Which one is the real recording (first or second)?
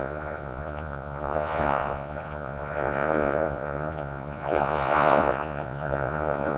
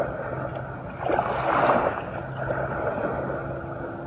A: second